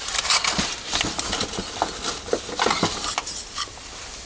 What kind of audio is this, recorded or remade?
recorded